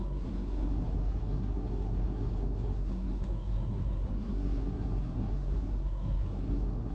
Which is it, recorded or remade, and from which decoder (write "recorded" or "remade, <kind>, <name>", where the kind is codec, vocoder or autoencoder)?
remade, codec, SNAC